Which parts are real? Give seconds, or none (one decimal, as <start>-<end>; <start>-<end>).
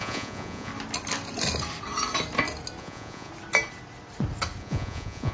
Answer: 0.7-2.8; 3.3-4.6